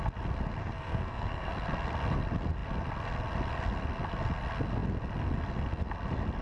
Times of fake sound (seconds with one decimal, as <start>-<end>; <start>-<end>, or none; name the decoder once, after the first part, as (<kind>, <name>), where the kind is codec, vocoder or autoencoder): 0.6-1.5 (codec, SNAC)